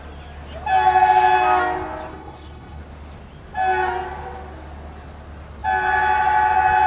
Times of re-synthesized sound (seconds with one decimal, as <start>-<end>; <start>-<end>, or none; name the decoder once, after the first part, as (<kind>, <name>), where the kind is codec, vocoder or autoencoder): 2.1-2.8 (codec, HILCodec)